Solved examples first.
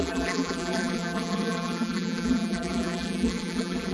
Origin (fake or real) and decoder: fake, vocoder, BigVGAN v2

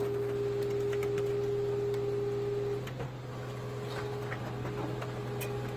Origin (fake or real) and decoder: real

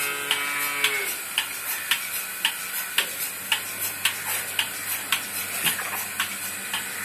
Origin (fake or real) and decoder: real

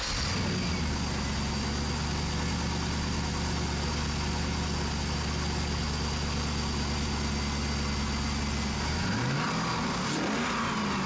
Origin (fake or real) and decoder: real